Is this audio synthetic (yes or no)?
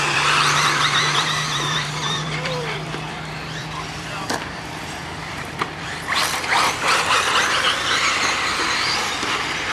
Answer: yes